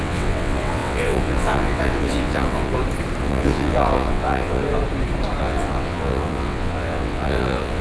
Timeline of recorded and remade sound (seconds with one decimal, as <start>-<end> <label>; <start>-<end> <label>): 0.0-2.7 remade; 2.7-3.2 recorded; 3.2-4.6 remade; 4.6-5.4 recorded; 5.4-7.8 remade